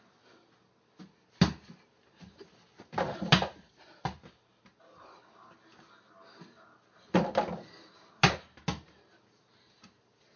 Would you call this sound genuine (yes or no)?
yes